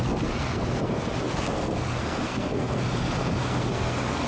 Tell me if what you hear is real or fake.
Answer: fake